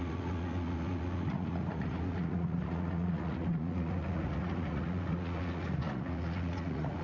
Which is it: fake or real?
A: fake